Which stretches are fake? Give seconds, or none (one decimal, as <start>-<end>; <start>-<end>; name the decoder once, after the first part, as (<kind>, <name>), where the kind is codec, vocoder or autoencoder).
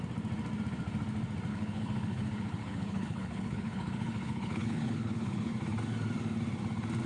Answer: 1.5-5.5 (codec, HILCodec)